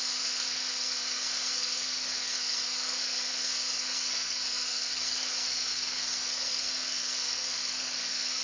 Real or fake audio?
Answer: fake